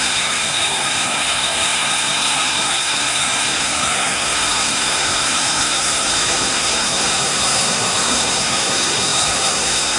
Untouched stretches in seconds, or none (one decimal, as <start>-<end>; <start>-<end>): none

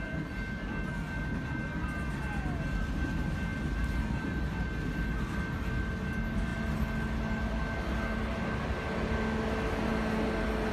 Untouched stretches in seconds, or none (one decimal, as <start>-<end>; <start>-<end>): 0.0-10.7

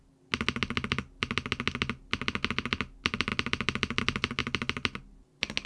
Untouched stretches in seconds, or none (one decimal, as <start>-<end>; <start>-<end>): 0.0-5.7

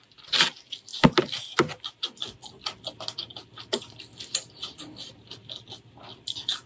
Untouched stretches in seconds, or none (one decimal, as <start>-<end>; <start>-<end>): 0.0-6.7

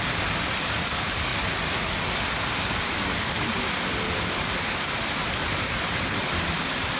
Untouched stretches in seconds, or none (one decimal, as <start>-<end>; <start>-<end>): 5.4-6.2

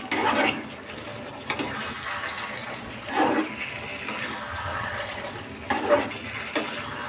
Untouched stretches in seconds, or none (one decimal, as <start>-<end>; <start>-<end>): 0.0-2.6; 3.1-4.7; 5.4-7.1

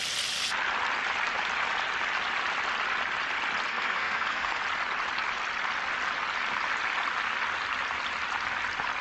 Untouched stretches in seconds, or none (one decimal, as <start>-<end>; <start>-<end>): 0.0-3.7; 4.6-9.0